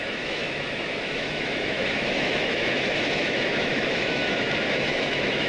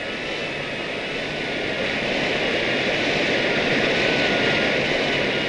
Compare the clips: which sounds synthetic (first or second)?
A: first